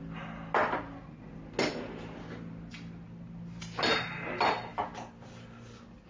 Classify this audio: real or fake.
real